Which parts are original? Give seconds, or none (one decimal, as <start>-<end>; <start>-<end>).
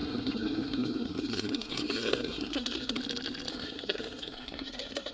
3.0-3.5